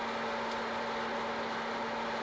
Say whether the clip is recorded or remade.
recorded